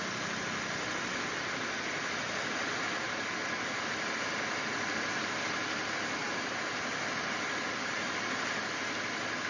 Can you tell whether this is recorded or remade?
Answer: recorded